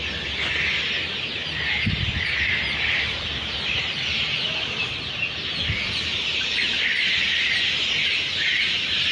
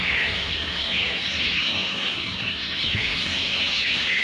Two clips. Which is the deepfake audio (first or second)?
second